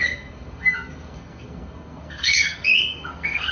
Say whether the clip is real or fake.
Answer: fake